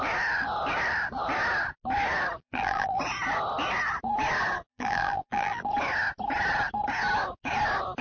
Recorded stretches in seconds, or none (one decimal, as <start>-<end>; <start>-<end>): 0.0-2.4; 3.0-4.7; 5.7-8.0